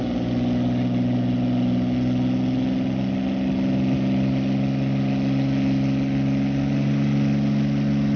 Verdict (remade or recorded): recorded